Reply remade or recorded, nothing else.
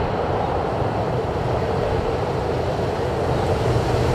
remade